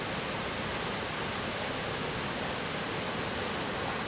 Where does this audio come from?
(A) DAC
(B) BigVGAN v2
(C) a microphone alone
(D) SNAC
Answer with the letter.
C